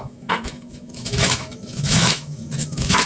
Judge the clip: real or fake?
fake